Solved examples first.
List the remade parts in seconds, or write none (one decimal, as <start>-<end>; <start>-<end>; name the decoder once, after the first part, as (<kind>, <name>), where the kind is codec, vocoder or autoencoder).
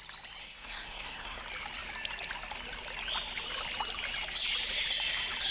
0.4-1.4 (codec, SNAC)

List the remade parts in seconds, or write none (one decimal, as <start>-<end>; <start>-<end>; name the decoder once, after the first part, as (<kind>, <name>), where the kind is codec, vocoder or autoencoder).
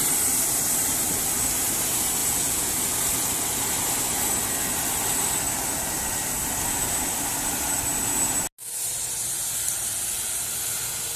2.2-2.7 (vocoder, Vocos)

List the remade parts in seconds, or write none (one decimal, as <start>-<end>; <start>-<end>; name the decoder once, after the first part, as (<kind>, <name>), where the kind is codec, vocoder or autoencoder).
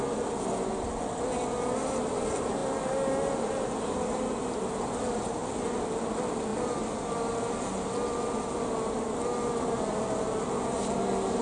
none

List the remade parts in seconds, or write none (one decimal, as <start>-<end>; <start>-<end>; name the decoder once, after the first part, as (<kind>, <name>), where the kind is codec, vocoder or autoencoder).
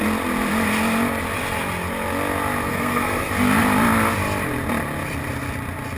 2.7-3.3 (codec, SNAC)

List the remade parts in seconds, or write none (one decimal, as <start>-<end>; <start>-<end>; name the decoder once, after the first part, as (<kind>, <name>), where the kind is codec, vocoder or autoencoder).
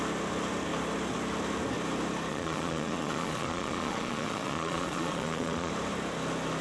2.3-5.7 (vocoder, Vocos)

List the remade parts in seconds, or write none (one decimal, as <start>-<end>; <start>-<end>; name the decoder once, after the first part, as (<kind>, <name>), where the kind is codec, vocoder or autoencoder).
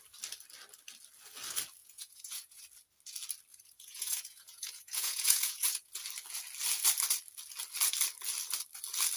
1.8-2.6 (vocoder, Vocos); 3.5-6.0